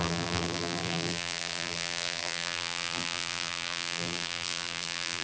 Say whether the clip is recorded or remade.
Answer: remade